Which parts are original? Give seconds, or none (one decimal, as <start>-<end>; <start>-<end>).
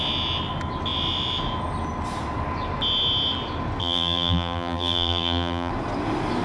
0.0-3.8; 5.7-6.4